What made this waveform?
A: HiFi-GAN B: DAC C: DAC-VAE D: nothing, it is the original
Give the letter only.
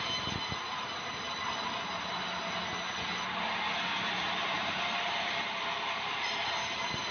D